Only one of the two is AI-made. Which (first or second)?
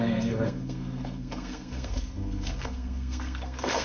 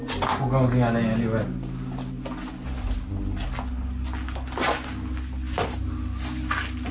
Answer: first